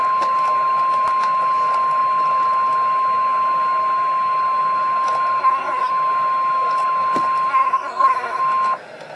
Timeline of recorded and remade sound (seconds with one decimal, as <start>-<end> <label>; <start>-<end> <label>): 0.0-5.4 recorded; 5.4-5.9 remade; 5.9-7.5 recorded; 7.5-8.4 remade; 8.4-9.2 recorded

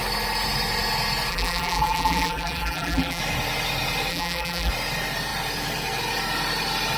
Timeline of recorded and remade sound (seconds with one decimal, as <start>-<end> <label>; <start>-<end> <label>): 0.0-1.3 recorded; 1.3-3.2 remade; 3.2-4.1 recorded; 4.1-4.7 remade; 4.7-7.0 recorded

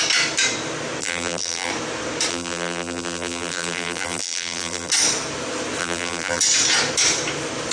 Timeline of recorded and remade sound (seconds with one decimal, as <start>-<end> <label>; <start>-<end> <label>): 0.0-1.0 recorded; 1.0-1.7 remade; 1.7-2.3 recorded; 2.3-4.9 remade; 4.9-5.8 recorded; 5.8-6.4 remade; 6.4-7.7 recorded

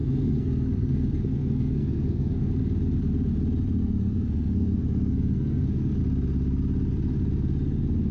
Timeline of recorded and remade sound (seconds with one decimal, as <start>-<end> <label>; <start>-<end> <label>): 0.0-2.5 remade; 2.5-3.8 recorded; 3.8-6.0 remade; 6.0-8.1 recorded